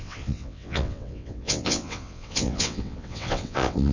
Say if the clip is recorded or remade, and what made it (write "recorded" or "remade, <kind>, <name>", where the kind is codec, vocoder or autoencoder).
remade, vocoder, WaveNeXt